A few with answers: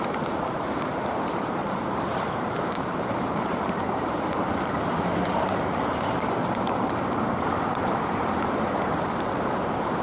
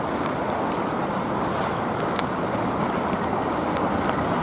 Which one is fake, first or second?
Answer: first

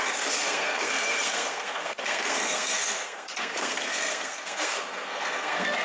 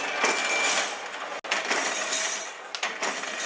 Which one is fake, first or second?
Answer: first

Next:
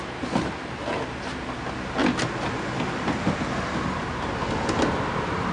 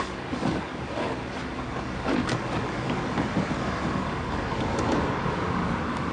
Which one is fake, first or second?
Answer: second